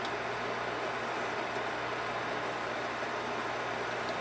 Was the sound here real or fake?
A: real